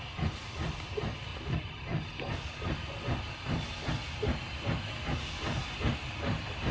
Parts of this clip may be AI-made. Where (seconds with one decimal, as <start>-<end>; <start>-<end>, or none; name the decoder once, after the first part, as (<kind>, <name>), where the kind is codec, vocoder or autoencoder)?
none